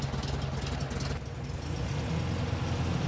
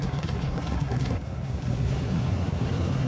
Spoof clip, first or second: second